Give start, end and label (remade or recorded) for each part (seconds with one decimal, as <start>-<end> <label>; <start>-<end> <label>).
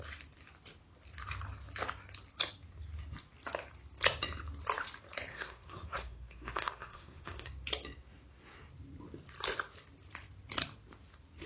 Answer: 0.0-5.3 recorded; 5.3-7.5 remade; 7.5-11.5 recorded